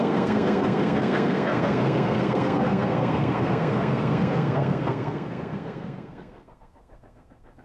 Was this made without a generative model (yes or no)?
no